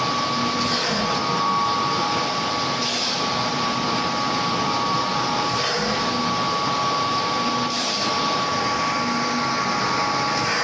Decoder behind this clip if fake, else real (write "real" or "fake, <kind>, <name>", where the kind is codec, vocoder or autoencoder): real